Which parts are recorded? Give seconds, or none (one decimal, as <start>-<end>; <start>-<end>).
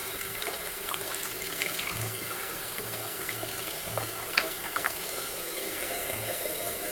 none